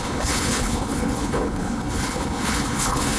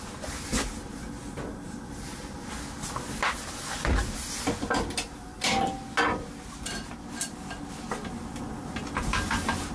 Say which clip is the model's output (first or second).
first